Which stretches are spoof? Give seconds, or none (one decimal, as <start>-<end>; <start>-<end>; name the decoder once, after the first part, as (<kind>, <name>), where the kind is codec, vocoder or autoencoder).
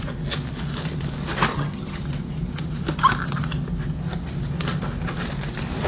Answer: 1.5-2.0 (vocoder, HiFi-GAN)